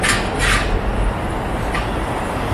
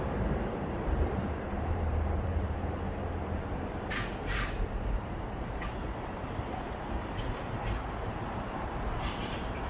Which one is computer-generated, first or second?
second